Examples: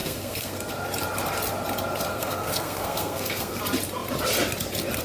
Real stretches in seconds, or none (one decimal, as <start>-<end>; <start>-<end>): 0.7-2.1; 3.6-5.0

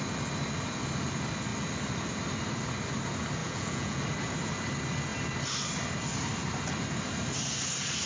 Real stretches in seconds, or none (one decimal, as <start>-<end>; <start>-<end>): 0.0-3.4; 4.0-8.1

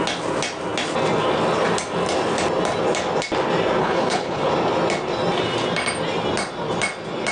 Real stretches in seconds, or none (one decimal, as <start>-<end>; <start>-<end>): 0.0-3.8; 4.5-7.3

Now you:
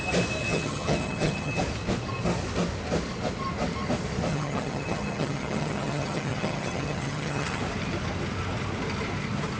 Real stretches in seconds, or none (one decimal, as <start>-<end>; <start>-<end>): 0.0-0.4; 1.6-4.3; 7.6-9.6

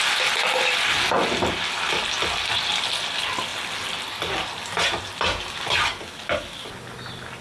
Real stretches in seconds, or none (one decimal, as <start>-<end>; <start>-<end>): 0.0-7.4